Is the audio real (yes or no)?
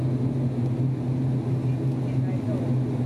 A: yes